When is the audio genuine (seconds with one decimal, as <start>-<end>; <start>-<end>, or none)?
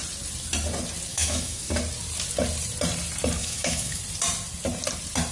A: 0.0-1.1; 1.7-3.4; 4.0-5.3